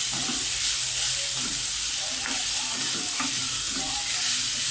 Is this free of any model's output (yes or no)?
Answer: yes